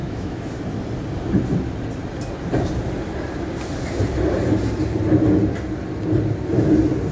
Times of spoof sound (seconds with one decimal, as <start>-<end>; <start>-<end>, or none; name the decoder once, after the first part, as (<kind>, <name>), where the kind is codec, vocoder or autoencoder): 0.0-0.5 (autoencoder, DAC-VAE)